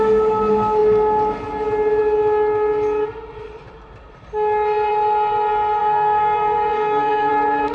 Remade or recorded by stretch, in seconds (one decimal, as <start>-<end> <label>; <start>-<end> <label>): 0.0-5.8 recorded; 5.8-7.3 remade; 7.3-7.7 recorded